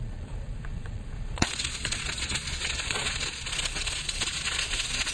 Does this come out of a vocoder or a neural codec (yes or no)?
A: yes